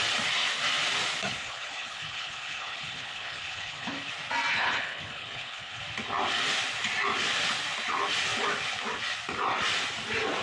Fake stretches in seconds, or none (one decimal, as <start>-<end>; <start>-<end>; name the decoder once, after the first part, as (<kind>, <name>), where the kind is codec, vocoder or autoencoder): 1.3-4.1 (codec, HILCodec); 4.5-5.8